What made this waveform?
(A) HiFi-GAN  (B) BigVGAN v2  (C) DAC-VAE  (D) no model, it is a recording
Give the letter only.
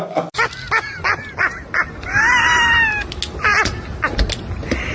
D